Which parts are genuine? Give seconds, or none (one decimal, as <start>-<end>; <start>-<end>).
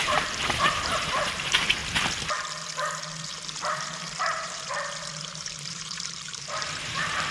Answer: 1.8-3.7; 4.7-5.2